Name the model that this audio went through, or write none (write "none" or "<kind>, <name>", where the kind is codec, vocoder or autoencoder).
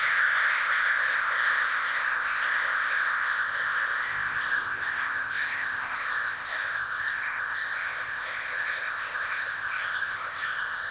codec, ZipCodec